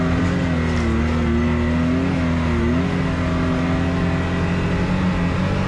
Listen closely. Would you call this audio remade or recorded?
recorded